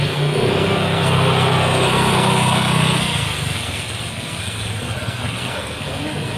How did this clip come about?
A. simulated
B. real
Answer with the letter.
A